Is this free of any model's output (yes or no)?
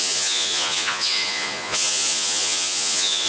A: no